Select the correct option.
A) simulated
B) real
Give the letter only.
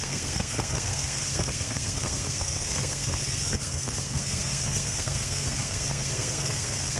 A